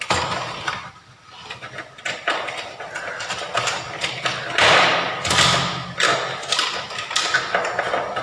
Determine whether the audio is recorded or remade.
recorded